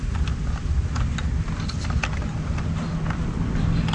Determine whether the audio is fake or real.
real